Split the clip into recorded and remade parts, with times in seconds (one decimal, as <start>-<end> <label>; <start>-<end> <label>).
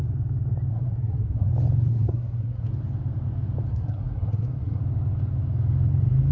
0.0-0.7 recorded; 0.7-1.5 remade; 1.5-1.9 recorded; 1.9-2.7 remade; 2.7-3.7 recorded; 3.7-4.8 remade; 4.8-6.3 recorded